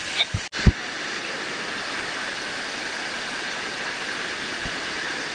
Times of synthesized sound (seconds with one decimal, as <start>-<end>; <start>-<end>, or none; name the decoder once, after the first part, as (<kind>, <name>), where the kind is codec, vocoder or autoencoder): 3.2-3.9 (vocoder, WaveNeXt)